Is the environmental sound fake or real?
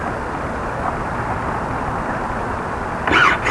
real